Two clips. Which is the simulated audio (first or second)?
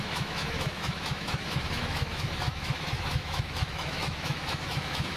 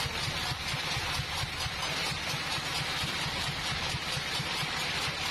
first